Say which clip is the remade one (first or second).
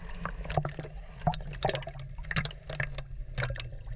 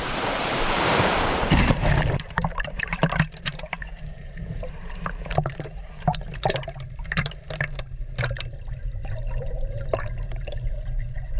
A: second